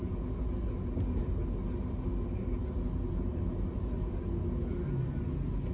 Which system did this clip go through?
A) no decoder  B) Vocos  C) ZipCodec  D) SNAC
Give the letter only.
A